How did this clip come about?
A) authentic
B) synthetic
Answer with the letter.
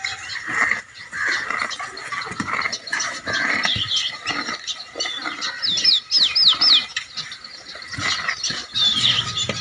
A